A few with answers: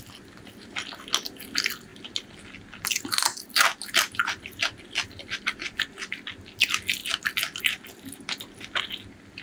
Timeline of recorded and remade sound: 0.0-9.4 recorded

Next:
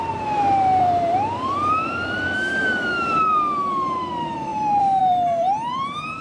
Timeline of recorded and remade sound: 0.0-6.2 remade

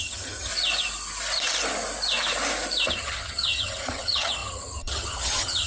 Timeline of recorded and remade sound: 0.0-0.5 remade; 0.5-2.9 recorded; 2.9-5.7 remade

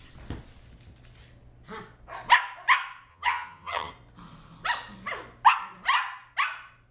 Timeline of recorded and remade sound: 0.0-3.1 recorded; 3.1-3.9 remade; 3.9-6.9 recorded

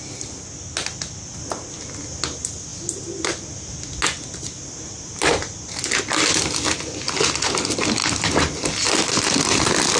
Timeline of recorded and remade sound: 0.0-10.0 recorded

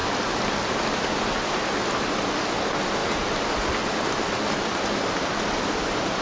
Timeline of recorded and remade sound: 0.0-1.8 remade; 1.8-3.0 recorded; 3.0-5.4 remade; 5.4-6.2 recorded